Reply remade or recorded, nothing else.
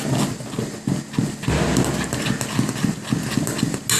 recorded